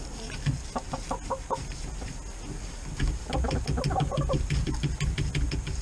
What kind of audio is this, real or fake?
real